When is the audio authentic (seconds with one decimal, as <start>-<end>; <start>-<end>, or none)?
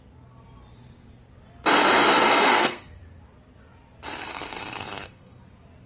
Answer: 0.0-2.1; 3.0-4.2; 5.4-5.9